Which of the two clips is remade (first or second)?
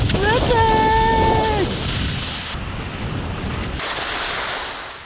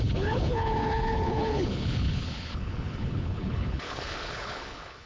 second